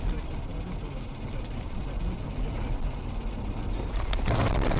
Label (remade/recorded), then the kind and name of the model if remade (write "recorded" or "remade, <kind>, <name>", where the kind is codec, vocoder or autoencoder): recorded